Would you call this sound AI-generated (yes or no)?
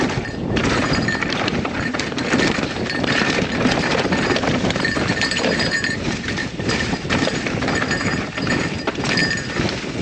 yes